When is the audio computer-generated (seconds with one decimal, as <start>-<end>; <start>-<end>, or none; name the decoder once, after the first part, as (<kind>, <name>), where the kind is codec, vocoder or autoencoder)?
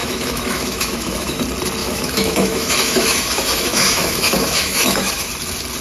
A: 0.0-1.4 (autoencoder, DAC-VAE); 1.8-5.3